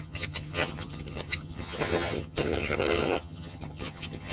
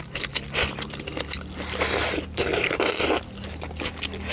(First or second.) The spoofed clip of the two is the first